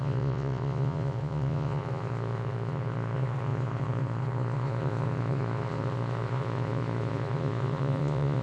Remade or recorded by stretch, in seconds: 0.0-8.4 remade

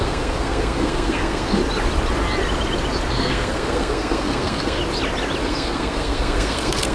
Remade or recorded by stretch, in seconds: 0.0-1.6 remade; 1.6-3.1 recorded; 3.1-4.8 remade; 4.8-5.4 recorded; 5.4-6.9 remade